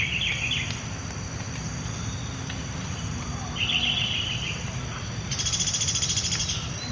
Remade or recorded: recorded